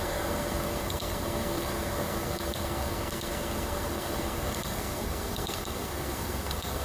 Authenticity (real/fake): fake